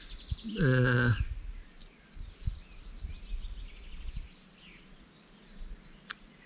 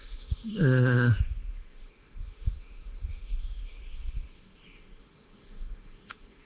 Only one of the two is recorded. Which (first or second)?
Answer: first